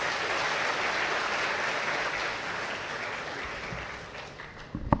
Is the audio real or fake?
real